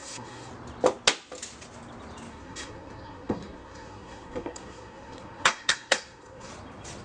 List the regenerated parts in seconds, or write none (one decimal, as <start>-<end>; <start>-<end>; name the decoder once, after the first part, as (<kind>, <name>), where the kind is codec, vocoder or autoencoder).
0.0-0.5 (codec, SNAC); 2.3-6.5